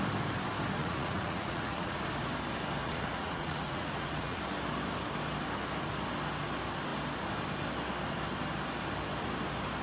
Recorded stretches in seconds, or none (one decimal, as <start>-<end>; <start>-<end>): 0.0-0.8; 2.0-2.8; 4.4-9.8